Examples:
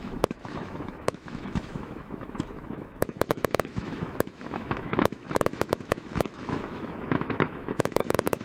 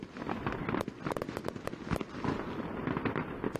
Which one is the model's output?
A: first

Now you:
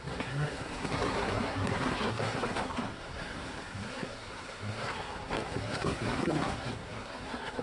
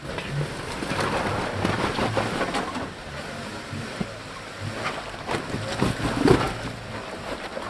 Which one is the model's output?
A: first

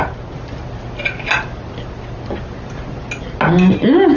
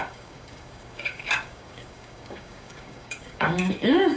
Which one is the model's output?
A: second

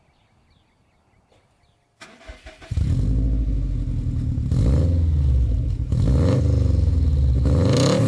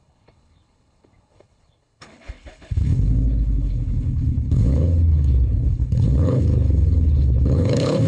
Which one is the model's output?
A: second